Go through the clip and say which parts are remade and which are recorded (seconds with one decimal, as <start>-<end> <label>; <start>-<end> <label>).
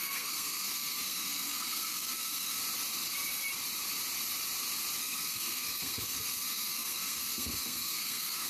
0.0-2.6 remade; 2.6-5.0 recorded; 5.0-8.5 remade